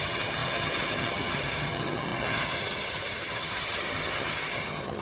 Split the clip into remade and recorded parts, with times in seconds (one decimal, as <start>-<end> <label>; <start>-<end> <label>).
0.0-5.0 remade